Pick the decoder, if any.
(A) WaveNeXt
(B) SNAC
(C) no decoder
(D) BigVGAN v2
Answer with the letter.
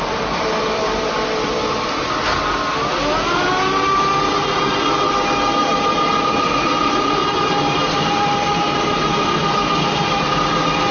C